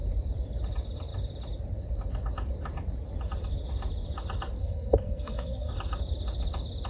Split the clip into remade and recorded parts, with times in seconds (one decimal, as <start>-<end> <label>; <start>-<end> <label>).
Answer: 0.0-4.6 recorded; 4.6-5.7 remade; 5.7-6.9 recorded